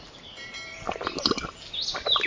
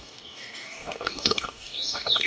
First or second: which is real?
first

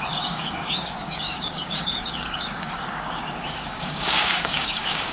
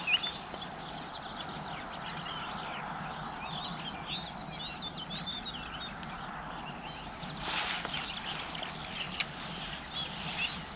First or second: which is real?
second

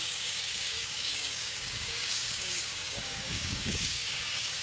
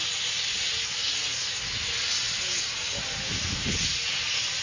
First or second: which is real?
second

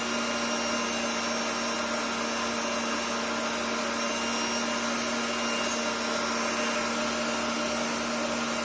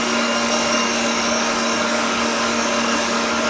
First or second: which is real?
first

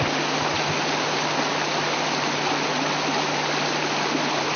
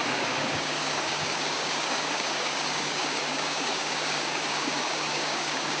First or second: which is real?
first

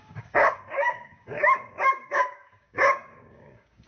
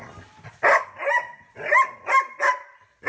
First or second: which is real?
second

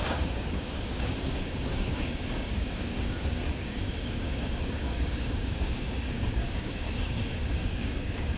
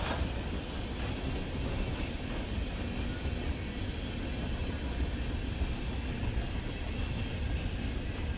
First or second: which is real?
second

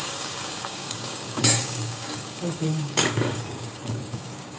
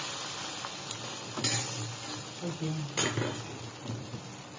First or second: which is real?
second